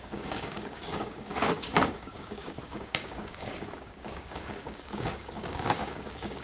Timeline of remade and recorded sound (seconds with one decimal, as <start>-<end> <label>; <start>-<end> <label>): 0.0-6.4 remade